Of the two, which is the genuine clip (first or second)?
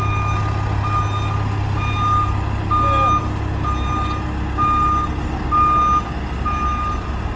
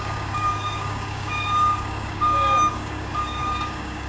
first